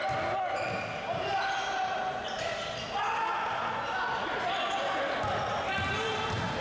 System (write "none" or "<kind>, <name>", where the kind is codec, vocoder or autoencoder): none